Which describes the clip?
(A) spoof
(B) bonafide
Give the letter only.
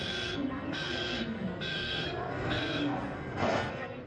A